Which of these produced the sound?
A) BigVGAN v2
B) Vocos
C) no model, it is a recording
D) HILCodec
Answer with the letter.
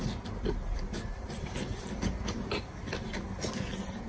C